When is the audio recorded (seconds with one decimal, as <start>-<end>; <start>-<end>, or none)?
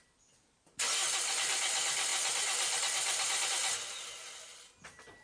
0.0-5.2